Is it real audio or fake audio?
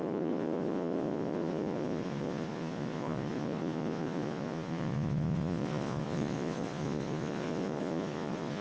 fake